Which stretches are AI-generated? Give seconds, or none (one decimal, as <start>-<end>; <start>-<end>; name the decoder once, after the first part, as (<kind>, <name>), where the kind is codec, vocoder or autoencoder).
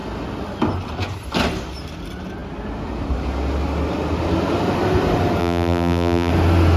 5.4-6.3 (vocoder, BigVGAN v2)